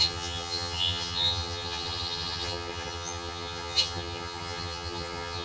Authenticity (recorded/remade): remade